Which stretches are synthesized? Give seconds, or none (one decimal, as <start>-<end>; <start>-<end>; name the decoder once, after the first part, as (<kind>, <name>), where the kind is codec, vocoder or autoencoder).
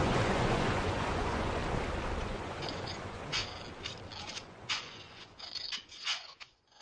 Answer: 0.0-1.6 (vocoder, Vocos); 2.2-3.4; 4.2-6.8